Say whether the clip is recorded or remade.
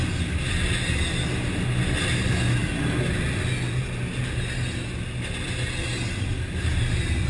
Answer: recorded